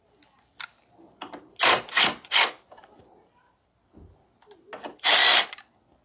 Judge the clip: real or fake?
real